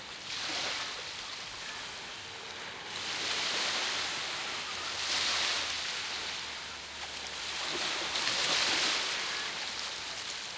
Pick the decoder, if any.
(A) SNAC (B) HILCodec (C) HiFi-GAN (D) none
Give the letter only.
D